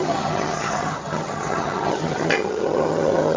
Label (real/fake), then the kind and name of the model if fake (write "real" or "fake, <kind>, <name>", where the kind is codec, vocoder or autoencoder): fake, vocoder, HiFi-GAN